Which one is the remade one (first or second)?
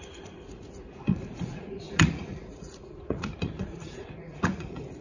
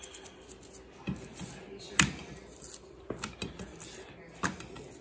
first